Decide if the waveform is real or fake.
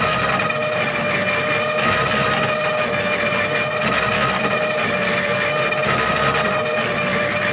real